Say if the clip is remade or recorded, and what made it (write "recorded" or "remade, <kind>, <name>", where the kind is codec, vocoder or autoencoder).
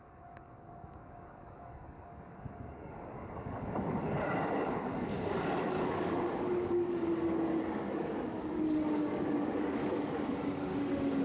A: remade, codec, DAC